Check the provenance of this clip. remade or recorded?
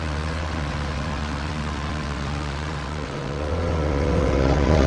remade